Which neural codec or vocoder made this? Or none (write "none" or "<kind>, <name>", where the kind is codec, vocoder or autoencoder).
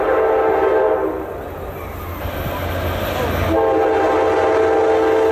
none